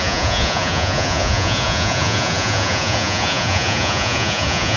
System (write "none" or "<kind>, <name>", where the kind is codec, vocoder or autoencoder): vocoder, Vocos